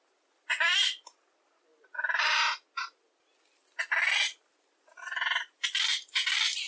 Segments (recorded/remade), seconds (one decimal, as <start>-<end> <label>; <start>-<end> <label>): 0.0-5.9 recorded; 5.9-6.7 remade